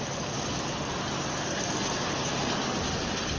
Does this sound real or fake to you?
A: real